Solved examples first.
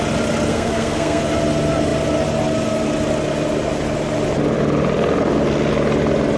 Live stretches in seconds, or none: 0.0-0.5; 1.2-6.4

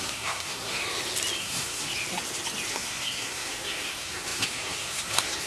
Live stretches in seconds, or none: 0.8-1.4; 1.9-2.7

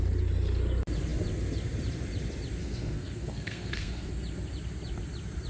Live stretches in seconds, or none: 0.0-2.6; 4.1-5.5